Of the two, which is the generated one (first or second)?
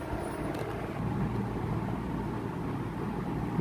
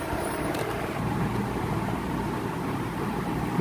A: second